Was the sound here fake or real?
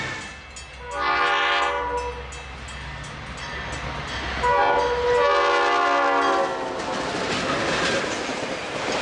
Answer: real